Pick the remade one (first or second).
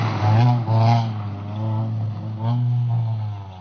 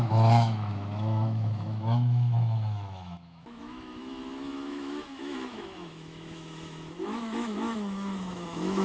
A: second